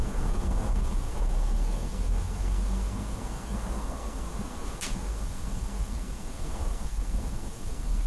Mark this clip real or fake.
fake